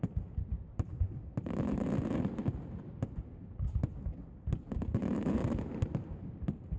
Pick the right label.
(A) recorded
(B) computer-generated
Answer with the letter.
A